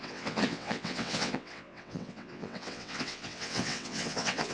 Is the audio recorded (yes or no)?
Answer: no